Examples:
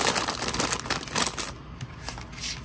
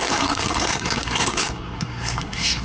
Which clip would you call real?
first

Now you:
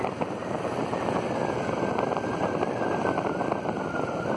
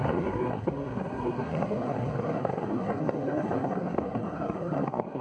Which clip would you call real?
first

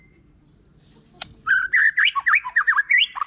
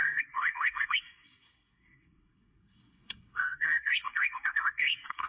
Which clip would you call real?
first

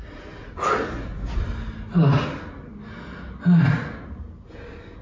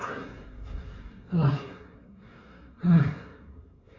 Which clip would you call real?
first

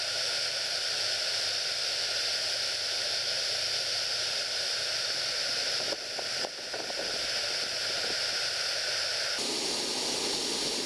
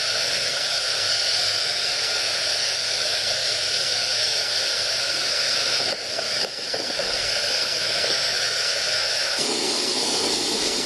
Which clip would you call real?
first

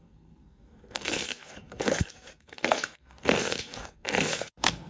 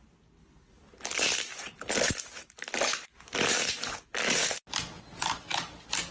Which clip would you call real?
second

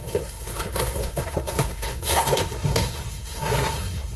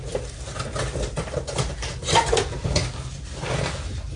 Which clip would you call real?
second